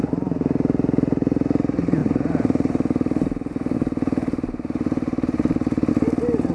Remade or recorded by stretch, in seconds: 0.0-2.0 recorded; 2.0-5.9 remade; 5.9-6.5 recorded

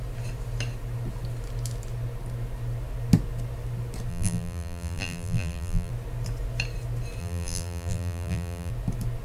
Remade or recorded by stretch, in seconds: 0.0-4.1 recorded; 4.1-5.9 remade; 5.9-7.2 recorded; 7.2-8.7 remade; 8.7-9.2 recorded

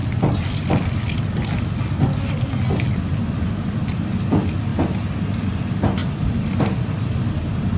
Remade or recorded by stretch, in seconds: 0.0-6.0 recorded; 6.0-7.2 remade; 7.2-7.8 recorded